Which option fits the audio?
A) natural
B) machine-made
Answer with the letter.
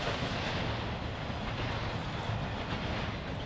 A